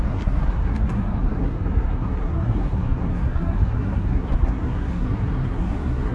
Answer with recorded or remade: remade